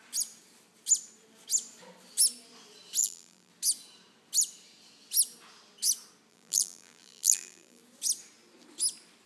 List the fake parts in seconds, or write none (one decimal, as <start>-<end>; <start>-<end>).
3.0-3.5; 6.3-7.8